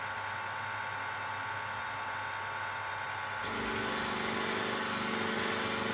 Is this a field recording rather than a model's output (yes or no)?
yes